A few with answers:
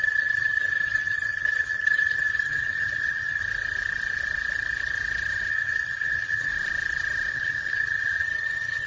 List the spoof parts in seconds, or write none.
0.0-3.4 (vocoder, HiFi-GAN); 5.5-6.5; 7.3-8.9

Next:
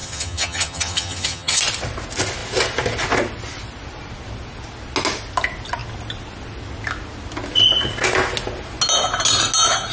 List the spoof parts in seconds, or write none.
0.0-1.6 (vocoder, HiFi-GAN)

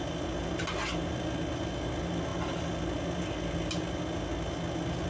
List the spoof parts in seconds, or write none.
none

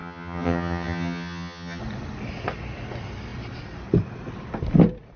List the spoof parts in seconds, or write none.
0.0-1.8 (vocoder, HiFi-GAN)

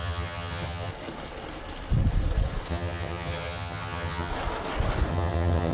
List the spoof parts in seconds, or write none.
0.0-0.9 (vocoder, HiFi-GAN); 2.7-4.3; 5.1-5.7

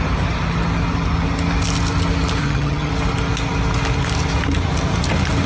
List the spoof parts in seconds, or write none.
2.4-2.9 (vocoder, HiFi-GAN)

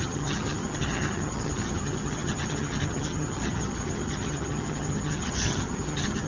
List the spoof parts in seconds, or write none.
0.0-6.3 (vocoder, HiFi-GAN)

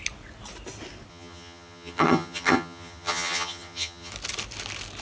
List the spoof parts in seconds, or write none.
1.1-4.1 (vocoder, HiFi-GAN)